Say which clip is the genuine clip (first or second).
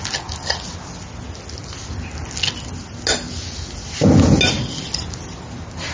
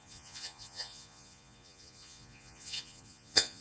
first